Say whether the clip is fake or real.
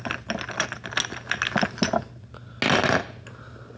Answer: real